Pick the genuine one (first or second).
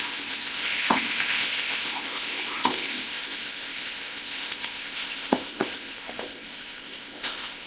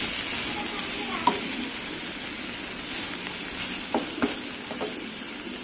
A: second